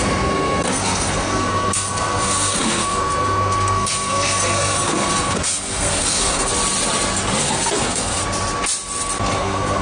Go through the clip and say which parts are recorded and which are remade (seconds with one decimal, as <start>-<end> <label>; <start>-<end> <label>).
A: 0.0-6.5 remade; 6.5-7.4 recorded; 7.4-8.2 remade; 8.2-9.4 recorded; 9.4-9.8 remade

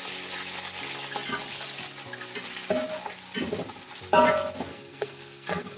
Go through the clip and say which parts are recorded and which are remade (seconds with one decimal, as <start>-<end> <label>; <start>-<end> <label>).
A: 0.0-4.7 recorded; 4.7-5.8 remade

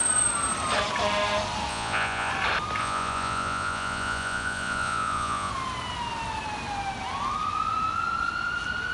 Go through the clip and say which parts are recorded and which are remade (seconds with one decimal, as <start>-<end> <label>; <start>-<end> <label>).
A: 0.0-1.7 recorded; 1.7-2.3 remade; 2.3-2.8 recorded; 2.8-5.5 remade; 5.5-8.9 recorded

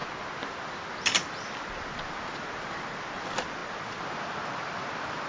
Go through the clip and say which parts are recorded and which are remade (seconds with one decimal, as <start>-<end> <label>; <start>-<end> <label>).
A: 0.0-5.3 recorded

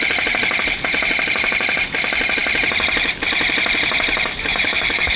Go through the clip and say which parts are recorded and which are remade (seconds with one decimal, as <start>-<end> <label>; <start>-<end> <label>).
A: 0.0-4.5 recorded; 4.5-5.2 remade

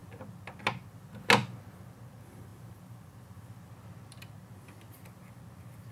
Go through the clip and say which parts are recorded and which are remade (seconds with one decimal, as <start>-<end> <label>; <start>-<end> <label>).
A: 0.0-5.9 recorded

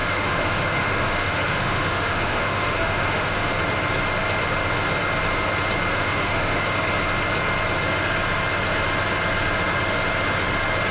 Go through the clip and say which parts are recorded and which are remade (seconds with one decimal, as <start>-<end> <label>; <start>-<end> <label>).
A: 0.0-3.5 remade; 3.5-5.9 recorded; 5.9-6.6 remade; 6.6-10.9 recorded

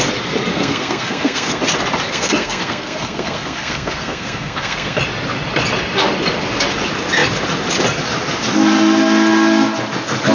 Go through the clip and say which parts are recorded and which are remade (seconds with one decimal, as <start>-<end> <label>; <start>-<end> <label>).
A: 0.0-0.5 recorded; 0.5-1.6 remade; 1.6-2.1 recorded; 2.1-5.0 remade; 5.0-10.3 recorded